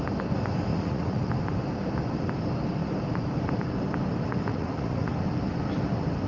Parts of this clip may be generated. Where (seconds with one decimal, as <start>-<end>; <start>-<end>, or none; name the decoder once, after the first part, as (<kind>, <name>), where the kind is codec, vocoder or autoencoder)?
0.7-1.3 (vocoder, Vocos); 4.5-5.1